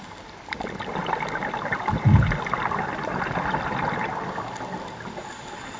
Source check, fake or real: real